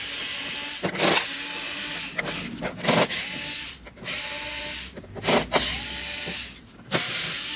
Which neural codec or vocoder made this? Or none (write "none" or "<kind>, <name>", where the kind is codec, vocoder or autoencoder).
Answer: none